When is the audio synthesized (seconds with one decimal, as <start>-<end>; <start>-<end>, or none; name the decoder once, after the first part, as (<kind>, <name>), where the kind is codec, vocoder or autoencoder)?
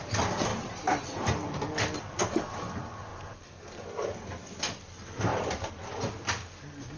none